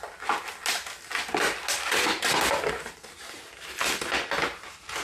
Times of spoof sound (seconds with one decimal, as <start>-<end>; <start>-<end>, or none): none